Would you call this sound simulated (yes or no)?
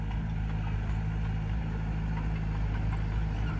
no